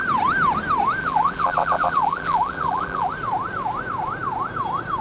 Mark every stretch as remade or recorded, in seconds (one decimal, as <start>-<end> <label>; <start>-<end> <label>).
0.0-1.0 recorded; 1.0-3.1 remade; 3.1-5.0 recorded

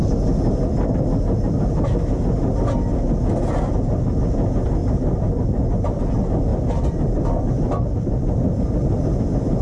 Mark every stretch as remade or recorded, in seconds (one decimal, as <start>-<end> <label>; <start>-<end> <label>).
0.0-6.5 recorded; 6.5-9.0 remade; 9.0-9.6 recorded

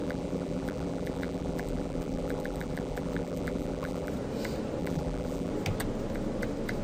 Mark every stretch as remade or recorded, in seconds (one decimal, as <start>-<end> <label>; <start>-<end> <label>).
0.0-4.1 remade; 4.1-4.8 recorded; 4.8-5.5 remade; 5.5-6.8 recorded

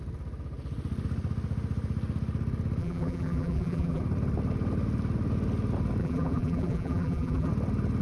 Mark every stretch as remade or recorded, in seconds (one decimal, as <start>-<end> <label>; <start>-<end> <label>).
0.0-2.8 recorded; 2.8-4.0 remade; 4.0-6.0 recorded; 6.0-7.5 remade; 7.5-8.0 recorded

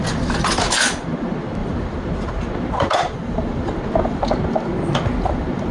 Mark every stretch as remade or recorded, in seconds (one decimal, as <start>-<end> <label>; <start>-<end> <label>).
0.0-1.6 recorded; 1.6-2.1 remade; 2.1-5.7 recorded

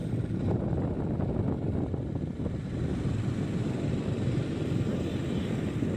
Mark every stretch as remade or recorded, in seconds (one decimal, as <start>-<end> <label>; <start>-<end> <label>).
0.0-6.0 recorded

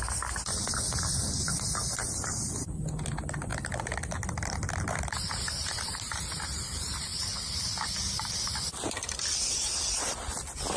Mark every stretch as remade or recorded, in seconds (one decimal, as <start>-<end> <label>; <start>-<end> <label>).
0.0-10.8 recorded